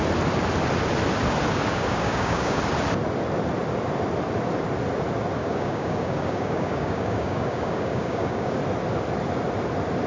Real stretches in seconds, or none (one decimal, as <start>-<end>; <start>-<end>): 0.0-1.7; 2.6-5.4; 8.6-10.1